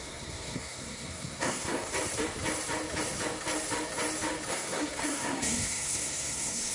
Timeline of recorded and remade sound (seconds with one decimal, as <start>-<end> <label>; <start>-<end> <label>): 0.0-1.9 remade; 1.9-4.5 recorded; 4.5-6.7 remade